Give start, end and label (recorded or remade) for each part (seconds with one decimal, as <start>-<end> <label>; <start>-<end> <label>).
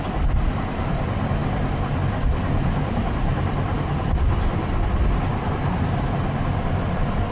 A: 0.0-7.3 recorded